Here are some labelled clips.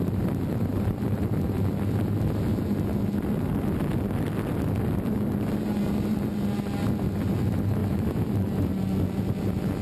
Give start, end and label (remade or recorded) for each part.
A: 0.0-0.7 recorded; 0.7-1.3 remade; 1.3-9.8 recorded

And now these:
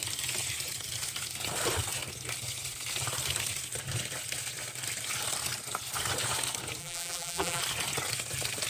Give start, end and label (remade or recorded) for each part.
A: 0.0-6.8 recorded; 6.8-7.6 remade; 7.6-8.7 recorded

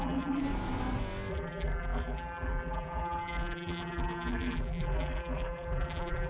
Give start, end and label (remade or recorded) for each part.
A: 0.0-0.4 remade; 0.4-1.3 recorded; 1.3-6.3 remade

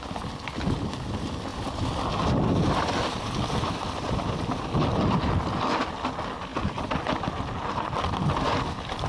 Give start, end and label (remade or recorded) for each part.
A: 0.0-9.1 recorded

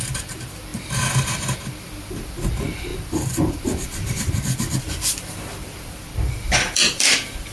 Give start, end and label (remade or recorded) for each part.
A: 0.0-0.7 remade; 0.7-1.3 recorded; 1.3-7.5 remade

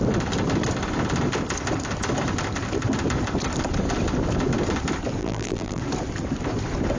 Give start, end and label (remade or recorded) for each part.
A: 0.0-5.2 recorded; 5.2-5.8 remade; 5.8-7.0 recorded